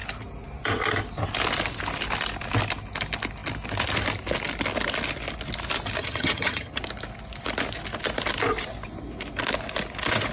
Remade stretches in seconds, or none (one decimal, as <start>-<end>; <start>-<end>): 6.0-6.8